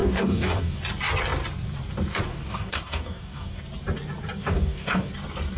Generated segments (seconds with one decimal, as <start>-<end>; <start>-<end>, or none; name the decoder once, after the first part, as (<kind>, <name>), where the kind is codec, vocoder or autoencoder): 0.0-0.8 (codec, DAC); 2.3-3.6; 4.4-5.1